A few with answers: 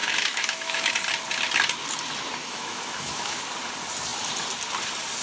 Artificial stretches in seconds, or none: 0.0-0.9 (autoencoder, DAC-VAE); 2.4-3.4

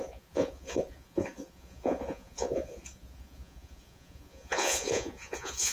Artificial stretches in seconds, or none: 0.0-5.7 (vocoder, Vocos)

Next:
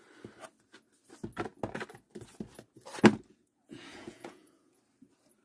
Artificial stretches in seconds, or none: 3.3-4.8 (vocoder, Vocos)

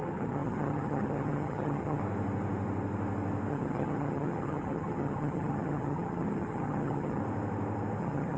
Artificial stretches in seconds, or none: 0.0-2.0 (vocoder, HiFi-GAN); 3.5-7.2; 8.0-8.4

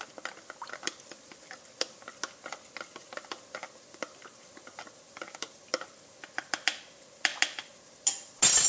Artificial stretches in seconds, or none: none

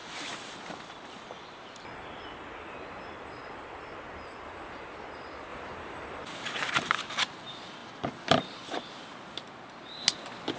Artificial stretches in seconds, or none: 0.0-1.4 (vocoder, BigVGAN v2); 5.5-6.9; 7.8-8.7

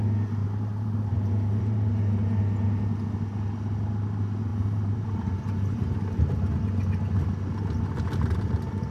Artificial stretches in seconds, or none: 0.4-2.4 (vocoder, BigVGAN v2); 4.5-6.4

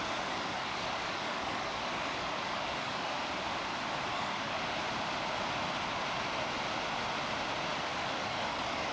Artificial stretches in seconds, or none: 0.0-3.2 (codec, DAC); 4.1-4.8; 7.7-8.9